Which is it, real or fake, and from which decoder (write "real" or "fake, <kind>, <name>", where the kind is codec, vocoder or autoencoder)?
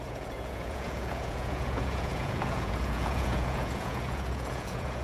fake, vocoder, Vocos